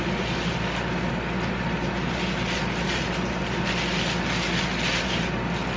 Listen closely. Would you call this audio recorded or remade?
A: recorded